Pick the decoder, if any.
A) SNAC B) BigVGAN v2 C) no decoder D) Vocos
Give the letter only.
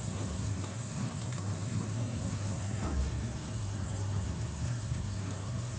A